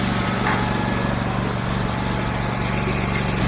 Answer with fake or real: real